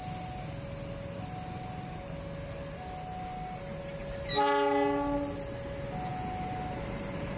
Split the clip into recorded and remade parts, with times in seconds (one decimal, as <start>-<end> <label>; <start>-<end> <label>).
0.0-7.4 recorded